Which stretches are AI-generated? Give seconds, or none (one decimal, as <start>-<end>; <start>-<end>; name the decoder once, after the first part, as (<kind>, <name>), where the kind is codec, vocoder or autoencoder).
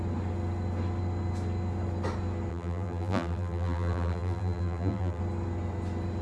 2.5-5.2 (vocoder, BigVGAN v2)